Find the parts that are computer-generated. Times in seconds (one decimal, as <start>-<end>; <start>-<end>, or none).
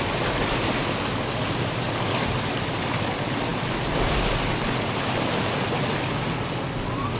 none